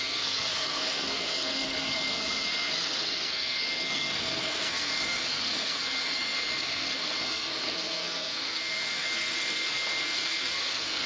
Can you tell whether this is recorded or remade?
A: remade